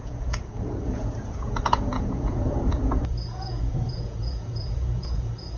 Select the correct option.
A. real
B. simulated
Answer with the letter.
B